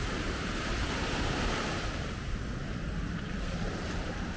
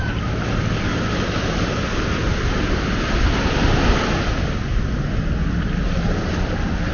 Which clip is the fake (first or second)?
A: first